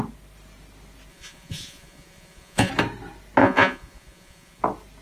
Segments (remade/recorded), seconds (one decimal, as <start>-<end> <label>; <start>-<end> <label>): 0.0-1.1 recorded; 1.1-2.7 remade; 2.7-3.4 recorded; 3.4-4.6 remade; 4.6-5.0 recorded